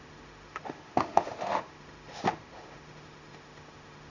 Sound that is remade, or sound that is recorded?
remade